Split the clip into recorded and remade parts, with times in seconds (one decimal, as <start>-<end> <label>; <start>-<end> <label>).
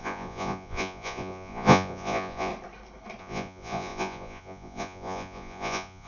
0.0-2.5 remade; 2.5-3.2 recorded; 3.2-6.1 remade